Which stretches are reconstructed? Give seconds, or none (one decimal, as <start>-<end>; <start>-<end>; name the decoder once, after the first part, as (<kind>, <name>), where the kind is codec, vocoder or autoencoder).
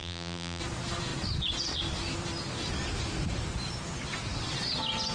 0.0-0.6 (vocoder, BigVGAN v2)